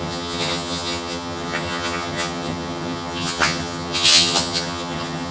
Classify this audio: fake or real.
fake